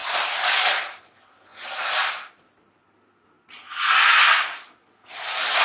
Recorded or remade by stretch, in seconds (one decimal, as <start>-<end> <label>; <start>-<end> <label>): 0.0-5.6 recorded